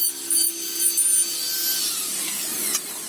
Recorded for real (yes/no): yes